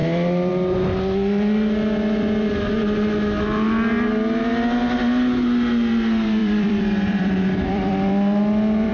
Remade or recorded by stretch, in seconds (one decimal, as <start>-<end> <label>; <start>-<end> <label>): 0.0-0.5 remade; 0.5-6.4 recorded; 6.4-8.9 remade